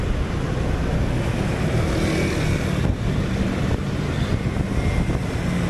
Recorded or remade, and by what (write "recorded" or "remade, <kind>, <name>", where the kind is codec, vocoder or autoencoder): recorded